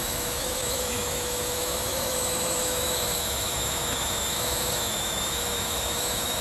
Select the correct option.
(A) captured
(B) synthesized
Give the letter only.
B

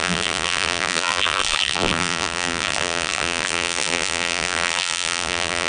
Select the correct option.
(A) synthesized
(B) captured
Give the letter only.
A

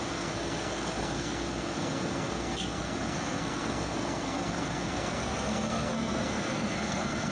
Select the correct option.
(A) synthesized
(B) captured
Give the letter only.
A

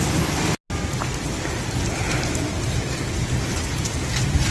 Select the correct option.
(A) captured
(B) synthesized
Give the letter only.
A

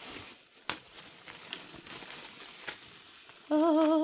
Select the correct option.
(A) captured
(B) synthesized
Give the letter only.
A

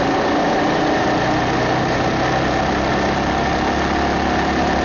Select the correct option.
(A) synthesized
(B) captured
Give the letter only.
B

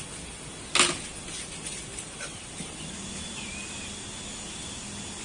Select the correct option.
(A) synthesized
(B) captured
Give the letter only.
B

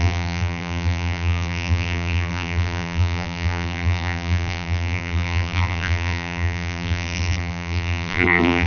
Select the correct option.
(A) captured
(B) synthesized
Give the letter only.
B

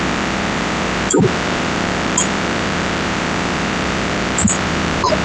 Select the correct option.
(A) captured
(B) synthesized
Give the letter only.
B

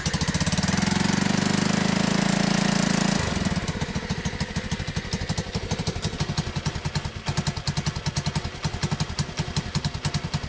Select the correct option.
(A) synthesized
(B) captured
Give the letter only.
B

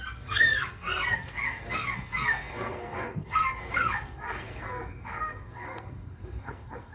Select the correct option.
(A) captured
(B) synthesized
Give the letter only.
B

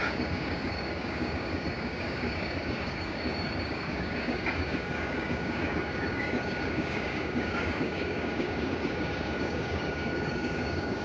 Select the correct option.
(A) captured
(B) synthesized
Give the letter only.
B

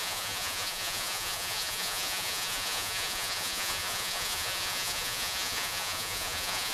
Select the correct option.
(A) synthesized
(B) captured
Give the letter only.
A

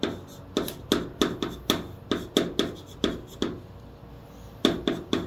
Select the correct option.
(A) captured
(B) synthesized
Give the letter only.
A